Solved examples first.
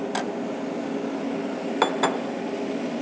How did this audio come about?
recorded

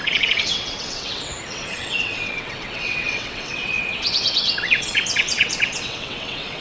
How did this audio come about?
remade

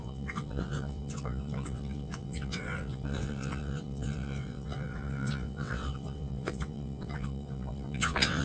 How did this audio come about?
remade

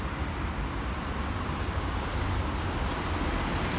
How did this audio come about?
recorded